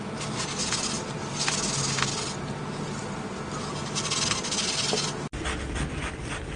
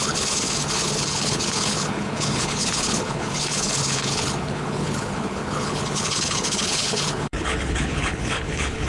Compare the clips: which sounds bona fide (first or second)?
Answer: first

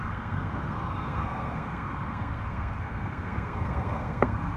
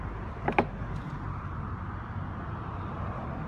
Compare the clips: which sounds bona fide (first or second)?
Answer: second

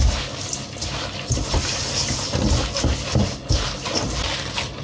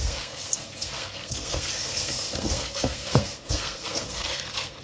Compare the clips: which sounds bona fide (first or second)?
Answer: first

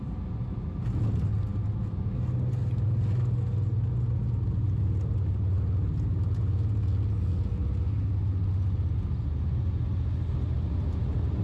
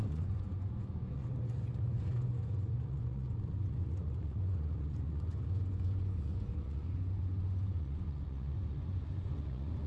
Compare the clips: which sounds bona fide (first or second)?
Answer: first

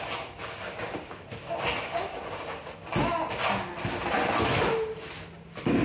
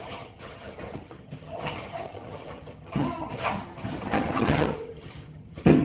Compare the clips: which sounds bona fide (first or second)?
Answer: first